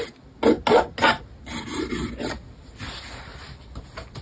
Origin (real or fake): real